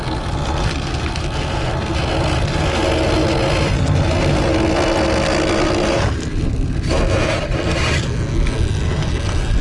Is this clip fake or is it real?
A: real